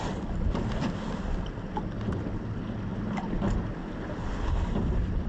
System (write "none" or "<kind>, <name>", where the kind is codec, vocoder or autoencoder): none